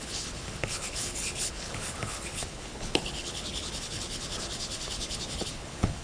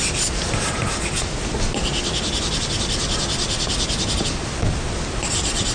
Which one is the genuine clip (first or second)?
second